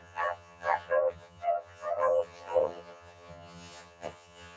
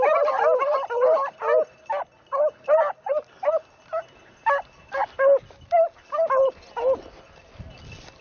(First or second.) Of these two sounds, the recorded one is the second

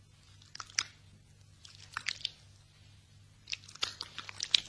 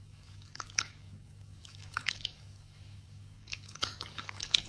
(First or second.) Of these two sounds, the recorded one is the first